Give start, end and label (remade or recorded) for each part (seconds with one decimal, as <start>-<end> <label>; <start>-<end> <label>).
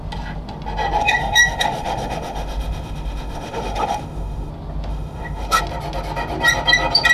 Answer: 0.0-1.0 recorded; 1.0-4.5 remade; 4.5-4.9 recorded; 4.9-5.6 remade; 5.6-7.1 recorded